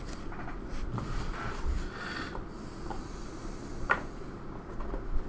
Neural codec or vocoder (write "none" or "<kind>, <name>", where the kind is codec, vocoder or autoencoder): none